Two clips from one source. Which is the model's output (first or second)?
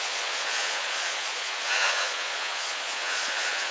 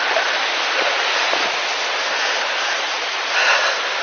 first